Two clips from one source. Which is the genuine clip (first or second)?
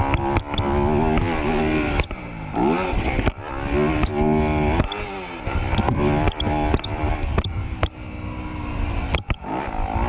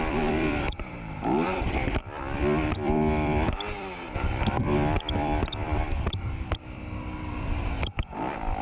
first